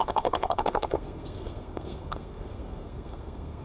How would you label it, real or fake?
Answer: fake